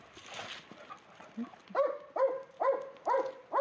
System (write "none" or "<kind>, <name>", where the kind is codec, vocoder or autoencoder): none